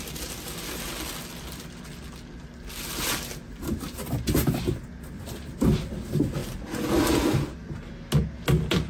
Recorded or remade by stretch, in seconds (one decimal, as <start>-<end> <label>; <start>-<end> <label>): 0.0-8.9 recorded